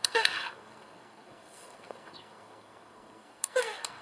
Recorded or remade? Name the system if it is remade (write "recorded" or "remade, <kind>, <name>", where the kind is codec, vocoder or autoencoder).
remade, codec, SNAC